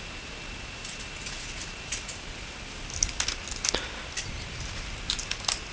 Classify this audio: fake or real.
real